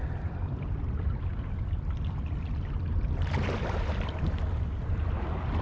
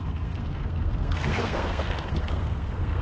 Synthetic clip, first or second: second